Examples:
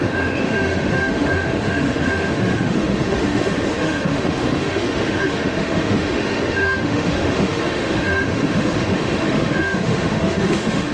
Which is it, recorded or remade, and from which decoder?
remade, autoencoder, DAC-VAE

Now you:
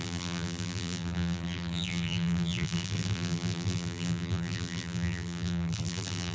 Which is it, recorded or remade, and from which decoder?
remade, vocoder, BigVGAN v2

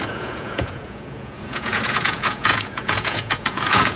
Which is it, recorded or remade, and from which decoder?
remade, vocoder, Vocos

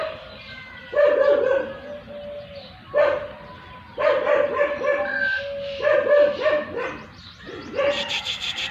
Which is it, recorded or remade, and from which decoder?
recorded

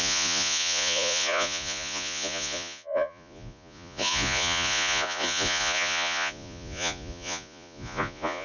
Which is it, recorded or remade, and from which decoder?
remade, vocoder, Vocos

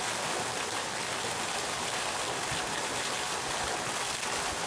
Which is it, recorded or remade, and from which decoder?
recorded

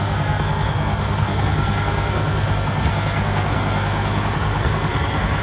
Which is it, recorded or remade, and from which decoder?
remade, codec, SNAC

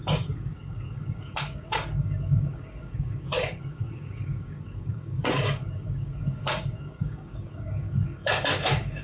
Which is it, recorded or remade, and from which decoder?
remade, codec, DAC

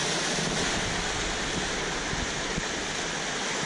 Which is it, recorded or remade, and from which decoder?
recorded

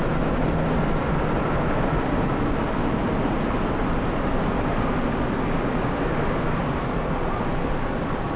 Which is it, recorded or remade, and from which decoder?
recorded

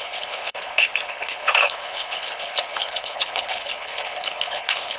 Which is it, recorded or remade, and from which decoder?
remade, codec, HILCodec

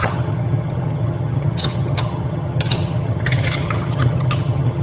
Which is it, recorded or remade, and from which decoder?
remade, vocoder, HiFi-GAN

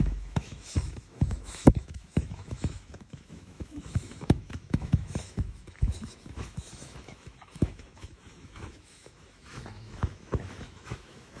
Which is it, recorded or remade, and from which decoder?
remade, autoencoder, DAC-VAE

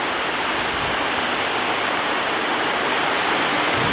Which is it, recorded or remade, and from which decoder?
recorded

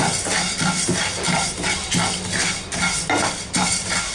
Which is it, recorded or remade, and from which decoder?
recorded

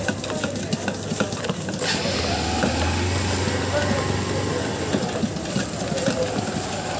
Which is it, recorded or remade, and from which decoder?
recorded